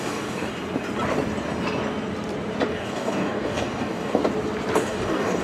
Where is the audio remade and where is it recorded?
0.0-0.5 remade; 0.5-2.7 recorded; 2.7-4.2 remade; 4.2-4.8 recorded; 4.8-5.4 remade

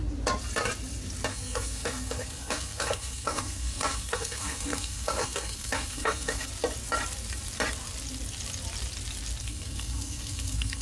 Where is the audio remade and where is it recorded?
0.0-1.3 recorded; 1.3-6.5 remade; 6.5-9.4 recorded; 9.4-10.8 remade

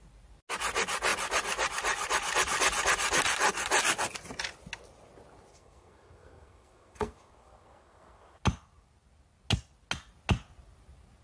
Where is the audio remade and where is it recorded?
0.0-5.5 recorded; 5.5-8.4 remade; 8.4-11.2 recorded

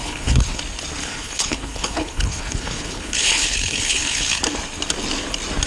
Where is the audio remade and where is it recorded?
0.0-0.6 remade; 0.6-1.0 recorded; 1.0-4.4 remade; 4.4-5.7 recorded

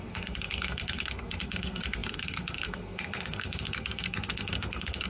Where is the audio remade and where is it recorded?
0.0-5.1 remade

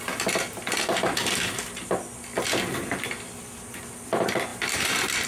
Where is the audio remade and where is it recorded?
0.0-4.5 recorded; 4.5-5.3 remade

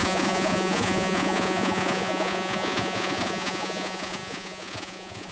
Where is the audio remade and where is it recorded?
0.0-5.3 remade